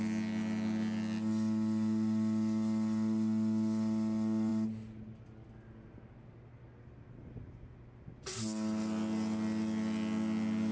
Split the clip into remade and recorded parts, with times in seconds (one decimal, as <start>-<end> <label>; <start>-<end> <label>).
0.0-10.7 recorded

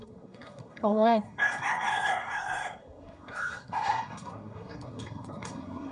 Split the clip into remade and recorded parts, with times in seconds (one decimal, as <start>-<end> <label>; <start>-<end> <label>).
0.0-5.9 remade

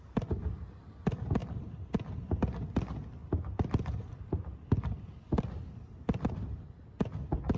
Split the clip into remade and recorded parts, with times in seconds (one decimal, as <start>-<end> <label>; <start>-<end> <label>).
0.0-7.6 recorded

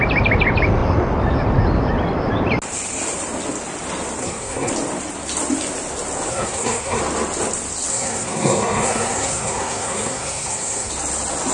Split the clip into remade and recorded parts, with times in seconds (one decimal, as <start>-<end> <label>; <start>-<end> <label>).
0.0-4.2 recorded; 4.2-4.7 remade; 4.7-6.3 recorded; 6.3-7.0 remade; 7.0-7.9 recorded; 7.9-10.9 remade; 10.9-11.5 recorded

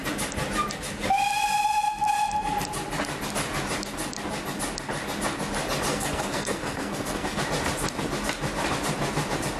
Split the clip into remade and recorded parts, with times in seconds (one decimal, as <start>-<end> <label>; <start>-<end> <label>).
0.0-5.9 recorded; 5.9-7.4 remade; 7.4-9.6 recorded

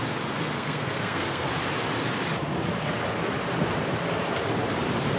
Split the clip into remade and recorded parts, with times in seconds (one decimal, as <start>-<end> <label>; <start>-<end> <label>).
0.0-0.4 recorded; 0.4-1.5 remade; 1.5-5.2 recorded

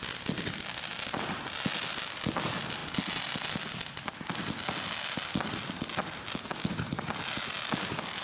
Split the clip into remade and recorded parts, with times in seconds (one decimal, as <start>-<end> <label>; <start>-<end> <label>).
0.0-8.2 recorded

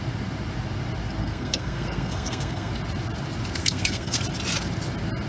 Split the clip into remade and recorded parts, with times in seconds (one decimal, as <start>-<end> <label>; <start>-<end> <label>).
0.0-1.2 recorded; 1.2-2.7 remade; 2.7-3.6 recorded; 3.6-4.2 remade; 4.2-5.3 recorded